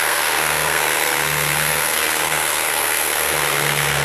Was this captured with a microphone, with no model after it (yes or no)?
no